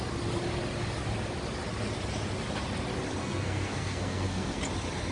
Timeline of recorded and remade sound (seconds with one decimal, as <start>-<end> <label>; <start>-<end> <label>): 0.0-3.2 recorded; 3.2-4.6 remade; 4.6-5.1 recorded